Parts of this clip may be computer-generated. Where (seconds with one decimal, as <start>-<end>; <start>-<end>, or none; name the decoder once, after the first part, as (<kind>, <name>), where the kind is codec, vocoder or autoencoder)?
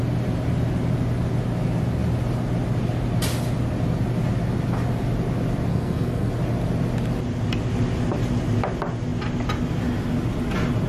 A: 5.7-6.3 (codec, SNAC)